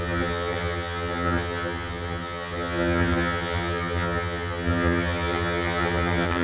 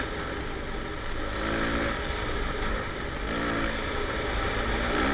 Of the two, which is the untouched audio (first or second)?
second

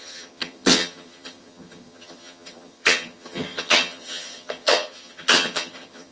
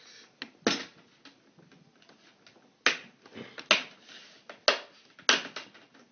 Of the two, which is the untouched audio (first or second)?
second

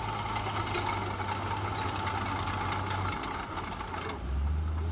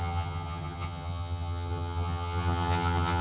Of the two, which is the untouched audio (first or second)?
first